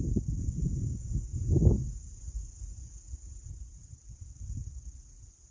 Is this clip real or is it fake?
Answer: real